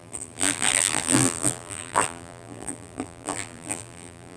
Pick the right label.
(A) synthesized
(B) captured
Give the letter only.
A